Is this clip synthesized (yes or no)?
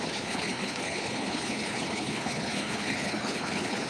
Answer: yes